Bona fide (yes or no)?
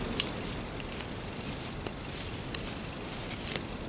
no